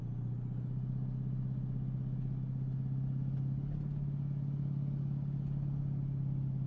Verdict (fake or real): real